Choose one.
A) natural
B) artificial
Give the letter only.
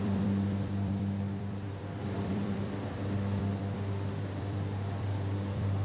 B